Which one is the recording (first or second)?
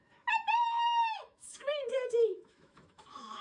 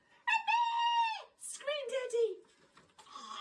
second